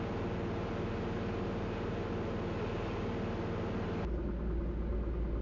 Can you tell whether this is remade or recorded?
recorded